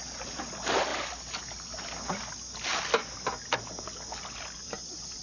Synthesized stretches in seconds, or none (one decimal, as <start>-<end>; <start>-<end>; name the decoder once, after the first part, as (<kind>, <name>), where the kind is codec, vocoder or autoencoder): none